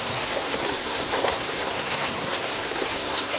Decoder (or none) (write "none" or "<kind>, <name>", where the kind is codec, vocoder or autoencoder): codec, SNAC